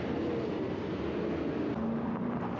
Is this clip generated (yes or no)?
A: no